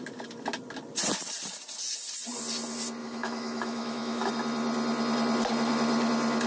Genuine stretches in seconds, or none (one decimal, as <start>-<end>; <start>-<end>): 0.0-3.0; 4.3-6.5

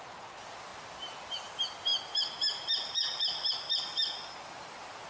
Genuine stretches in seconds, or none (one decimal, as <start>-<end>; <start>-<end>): 0.0-1.9

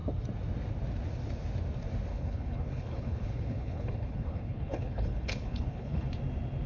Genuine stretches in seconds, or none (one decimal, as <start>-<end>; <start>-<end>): 0.0-2.1; 6.1-6.7

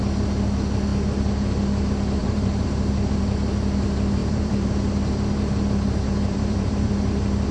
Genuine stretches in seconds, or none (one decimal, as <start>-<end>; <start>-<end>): 0.0-0.9; 1.5-2.2; 3.2-4.2; 6.9-7.5

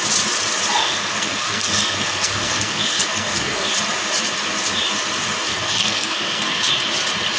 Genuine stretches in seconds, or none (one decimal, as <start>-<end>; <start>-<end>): 0.0-0.8; 3.7-5.5; 6.7-7.4

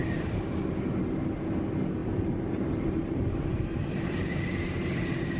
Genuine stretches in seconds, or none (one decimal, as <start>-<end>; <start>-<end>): 0.0-2.0

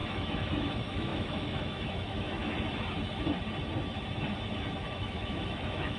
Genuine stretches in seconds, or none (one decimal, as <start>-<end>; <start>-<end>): 2.4-4.9

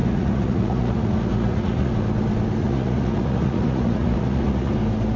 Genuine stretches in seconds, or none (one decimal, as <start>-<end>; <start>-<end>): 1.9-2.6; 4.7-5.2